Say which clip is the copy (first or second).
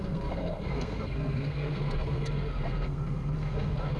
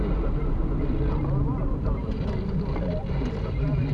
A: first